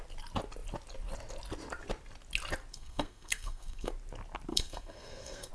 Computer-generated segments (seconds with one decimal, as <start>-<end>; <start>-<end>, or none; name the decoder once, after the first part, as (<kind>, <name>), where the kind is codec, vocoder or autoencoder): 2.7-3.9 (codec, SNAC); 4.5-5.5